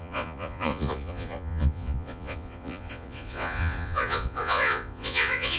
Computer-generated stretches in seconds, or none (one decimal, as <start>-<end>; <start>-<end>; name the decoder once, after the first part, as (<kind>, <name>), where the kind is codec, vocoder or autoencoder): 0.0-5.6 (vocoder, Vocos)